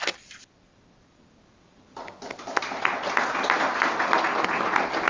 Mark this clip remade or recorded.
recorded